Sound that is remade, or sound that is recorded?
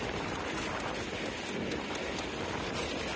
recorded